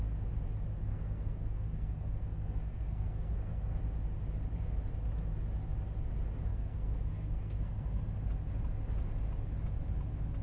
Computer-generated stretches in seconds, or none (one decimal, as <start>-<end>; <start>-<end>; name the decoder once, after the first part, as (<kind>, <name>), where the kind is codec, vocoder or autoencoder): 0.9-3.8 (codec, SNAC); 6.5-8.0